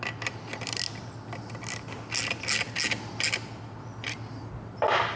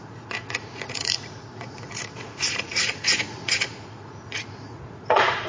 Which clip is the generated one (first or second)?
second